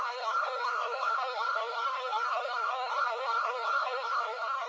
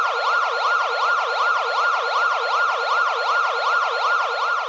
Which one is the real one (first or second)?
second